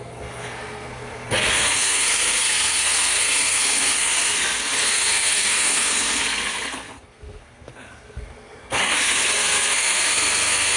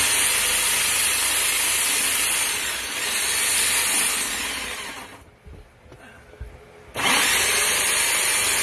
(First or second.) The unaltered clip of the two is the second